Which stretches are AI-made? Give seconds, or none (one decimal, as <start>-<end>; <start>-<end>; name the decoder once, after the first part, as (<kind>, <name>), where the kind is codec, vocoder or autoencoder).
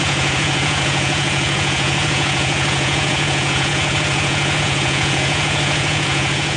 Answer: 0.0-6.6 (vocoder, Vocos)